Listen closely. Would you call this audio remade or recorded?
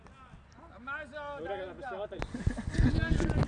recorded